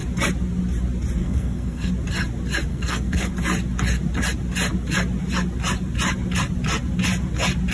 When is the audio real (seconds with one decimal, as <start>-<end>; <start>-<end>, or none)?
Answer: 0.0-1.2; 1.9-2.7; 3.3-7.7